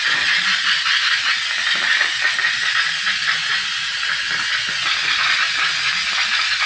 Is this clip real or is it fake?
real